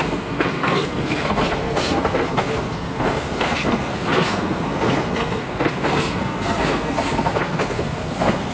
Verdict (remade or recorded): remade